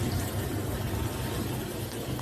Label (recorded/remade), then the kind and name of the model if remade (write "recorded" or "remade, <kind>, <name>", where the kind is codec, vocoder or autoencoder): recorded